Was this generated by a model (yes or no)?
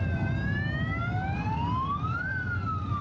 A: no